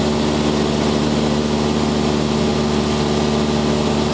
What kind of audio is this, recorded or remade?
recorded